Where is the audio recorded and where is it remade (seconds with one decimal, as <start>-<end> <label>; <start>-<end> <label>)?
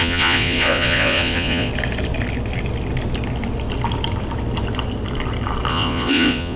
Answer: 0.0-1.7 remade; 1.7-5.7 recorded; 5.7-6.6 remade